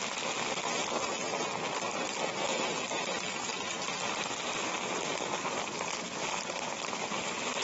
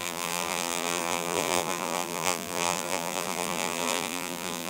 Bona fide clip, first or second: first